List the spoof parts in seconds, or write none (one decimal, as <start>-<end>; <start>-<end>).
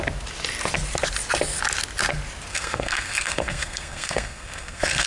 2.5-5.1